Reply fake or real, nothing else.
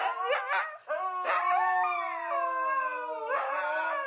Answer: real